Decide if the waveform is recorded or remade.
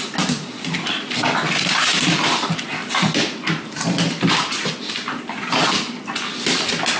recorded